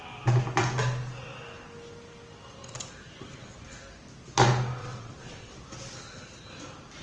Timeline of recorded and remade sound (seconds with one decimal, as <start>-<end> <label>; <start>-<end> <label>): 0.0-4.8 recorded; 4.8-5.5 remade; 5.5-7.0 recorded